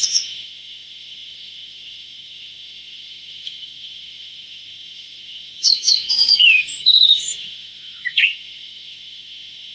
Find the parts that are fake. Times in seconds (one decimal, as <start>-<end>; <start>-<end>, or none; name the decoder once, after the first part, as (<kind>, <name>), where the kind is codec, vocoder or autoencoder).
0.0-9.7 (autoencoder, DAC-VAE)